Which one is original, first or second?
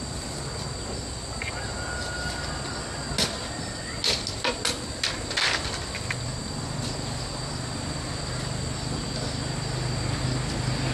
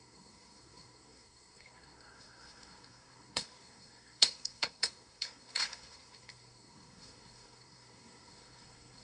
first